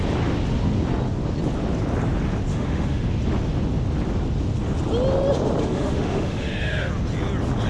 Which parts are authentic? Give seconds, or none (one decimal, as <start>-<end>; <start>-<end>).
0.0-2.5; 3.1-5.6; 6.9-7.7